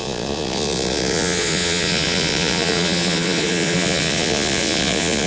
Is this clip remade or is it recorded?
remade